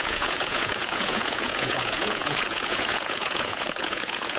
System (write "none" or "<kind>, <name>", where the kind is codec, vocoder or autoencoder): vocoder, Vocos